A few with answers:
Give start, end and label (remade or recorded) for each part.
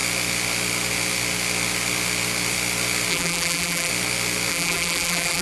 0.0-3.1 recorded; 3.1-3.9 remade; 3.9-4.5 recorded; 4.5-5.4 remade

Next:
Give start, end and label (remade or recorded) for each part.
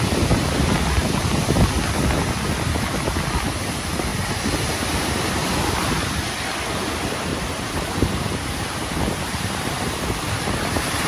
0.0-7.3 recorded; 7.3-9.8 remade; 9.8-11.1 recorded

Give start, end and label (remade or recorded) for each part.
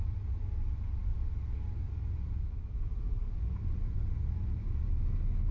0.0-1.1 remade; 1.1-2.1 recorded; 2.1-4.9 remade; 4.9-5.5 recorded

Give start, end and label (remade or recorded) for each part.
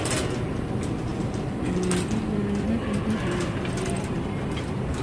0.0-5.0 recorded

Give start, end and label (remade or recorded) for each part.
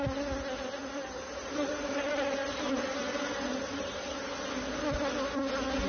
0.0-0.8 recorded; 0.8-4.3 remade; 4.3-5.9 recorded